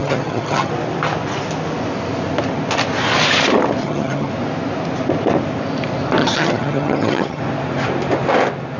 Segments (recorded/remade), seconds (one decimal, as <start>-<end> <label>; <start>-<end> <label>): 0.0-0.7 remade; 0.7-3.8 recorded; 3.8-4.3 remade; 4.3-6.2 recorded; 6.2-7.4 remade; 7.4-8.8 recorded